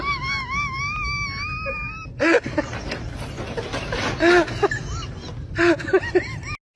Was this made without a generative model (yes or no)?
yes